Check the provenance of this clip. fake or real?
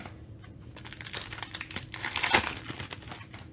real